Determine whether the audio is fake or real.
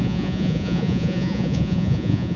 fake